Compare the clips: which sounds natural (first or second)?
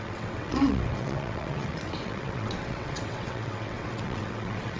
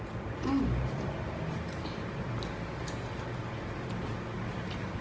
second